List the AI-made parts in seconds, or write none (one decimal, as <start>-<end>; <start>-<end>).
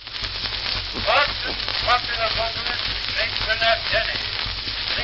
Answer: none